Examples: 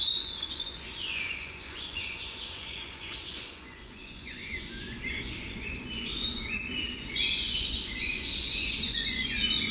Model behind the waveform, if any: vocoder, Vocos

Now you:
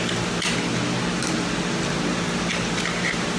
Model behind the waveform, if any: none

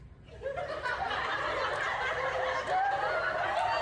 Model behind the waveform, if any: none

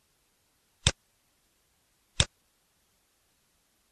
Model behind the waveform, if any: none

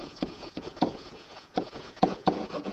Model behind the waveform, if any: vocoder, Vocos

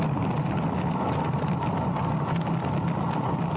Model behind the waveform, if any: none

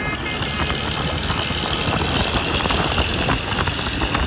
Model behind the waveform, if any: none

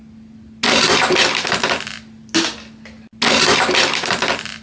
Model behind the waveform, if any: none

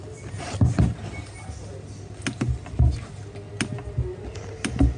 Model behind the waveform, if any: none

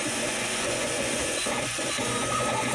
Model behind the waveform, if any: vocoder, Vocos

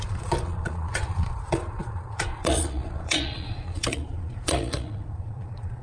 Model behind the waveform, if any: vocoder, Vocos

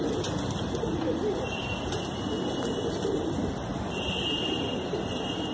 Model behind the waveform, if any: none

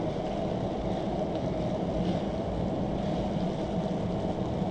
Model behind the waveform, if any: none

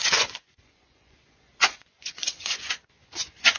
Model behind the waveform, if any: vocoder, Vocos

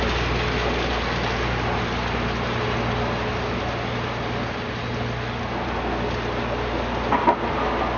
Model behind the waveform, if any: none